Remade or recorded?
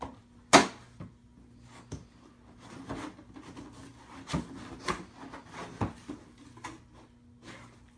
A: recorded